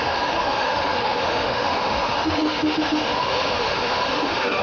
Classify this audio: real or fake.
fake